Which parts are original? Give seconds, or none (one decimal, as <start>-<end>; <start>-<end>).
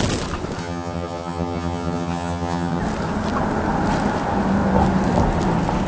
0.0-0.6; 2.8-5.9